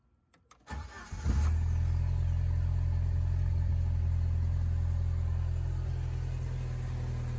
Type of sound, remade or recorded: recorded